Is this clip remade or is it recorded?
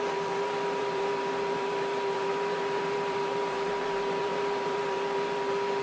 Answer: remade